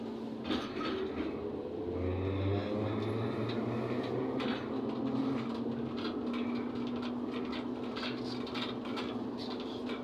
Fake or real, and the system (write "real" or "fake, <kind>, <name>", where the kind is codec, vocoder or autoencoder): real